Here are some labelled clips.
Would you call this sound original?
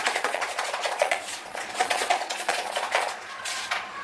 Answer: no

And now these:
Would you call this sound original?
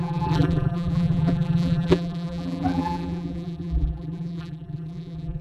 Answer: no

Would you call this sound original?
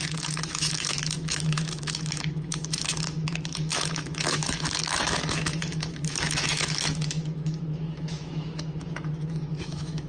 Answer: no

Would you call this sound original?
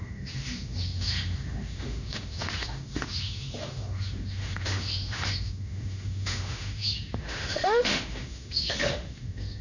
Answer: no